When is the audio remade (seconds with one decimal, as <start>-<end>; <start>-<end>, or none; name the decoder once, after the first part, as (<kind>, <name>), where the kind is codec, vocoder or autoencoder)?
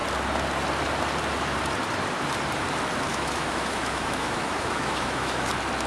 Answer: 3.1-5.5 (autoencoder, DAC-VAE)